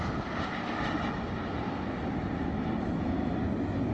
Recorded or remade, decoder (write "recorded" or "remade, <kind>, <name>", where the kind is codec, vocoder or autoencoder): recorded